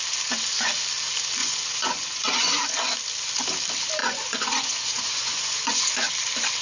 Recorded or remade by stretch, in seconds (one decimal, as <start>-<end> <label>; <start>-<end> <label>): 0.0-1.4 recorded; 1.4-2.6 remade; 2.6-4.0 recorded; 4.0-6.1 remade; 6.1-6.6 recorded